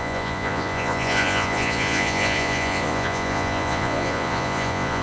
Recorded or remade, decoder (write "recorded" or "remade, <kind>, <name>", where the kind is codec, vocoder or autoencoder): remade, vocoder, Vocos